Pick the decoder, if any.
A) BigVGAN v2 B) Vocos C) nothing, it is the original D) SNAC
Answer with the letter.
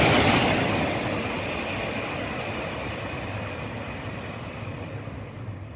C